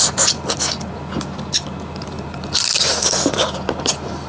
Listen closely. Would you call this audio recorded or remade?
recorded